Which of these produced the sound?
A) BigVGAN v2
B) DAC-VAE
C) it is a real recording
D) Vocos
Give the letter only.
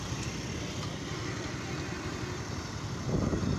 C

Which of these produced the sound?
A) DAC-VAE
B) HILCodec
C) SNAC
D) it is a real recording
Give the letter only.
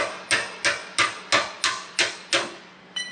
D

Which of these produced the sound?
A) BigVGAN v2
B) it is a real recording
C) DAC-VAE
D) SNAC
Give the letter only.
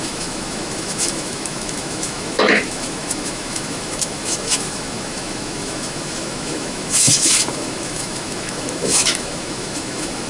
C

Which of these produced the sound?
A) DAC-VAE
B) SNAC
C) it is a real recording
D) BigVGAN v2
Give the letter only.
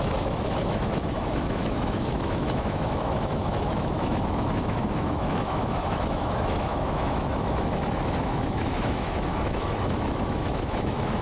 A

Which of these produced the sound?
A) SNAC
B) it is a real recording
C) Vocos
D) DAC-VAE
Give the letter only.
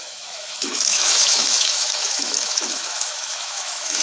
D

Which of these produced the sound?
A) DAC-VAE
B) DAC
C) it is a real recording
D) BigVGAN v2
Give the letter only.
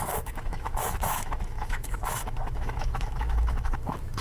A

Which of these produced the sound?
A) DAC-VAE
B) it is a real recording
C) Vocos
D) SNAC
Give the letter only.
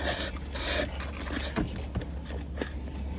B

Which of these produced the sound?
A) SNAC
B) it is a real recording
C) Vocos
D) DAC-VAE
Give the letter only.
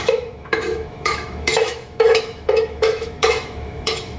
D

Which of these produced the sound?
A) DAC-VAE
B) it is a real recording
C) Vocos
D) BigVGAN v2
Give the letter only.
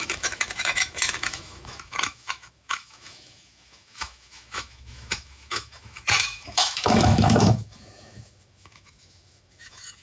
A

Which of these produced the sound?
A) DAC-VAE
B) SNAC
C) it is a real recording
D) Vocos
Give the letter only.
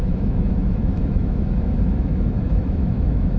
A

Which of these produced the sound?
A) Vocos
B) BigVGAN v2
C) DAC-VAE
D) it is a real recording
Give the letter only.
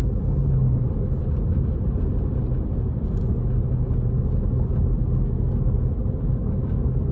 D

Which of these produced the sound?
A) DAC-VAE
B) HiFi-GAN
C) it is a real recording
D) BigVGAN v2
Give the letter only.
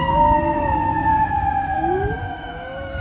A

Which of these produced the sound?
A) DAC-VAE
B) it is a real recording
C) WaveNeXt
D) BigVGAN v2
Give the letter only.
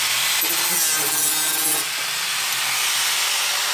B